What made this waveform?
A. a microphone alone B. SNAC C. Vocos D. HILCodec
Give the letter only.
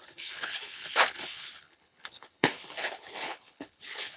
D